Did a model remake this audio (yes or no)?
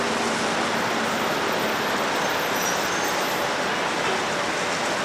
no